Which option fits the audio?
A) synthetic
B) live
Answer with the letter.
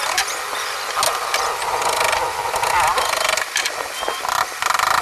B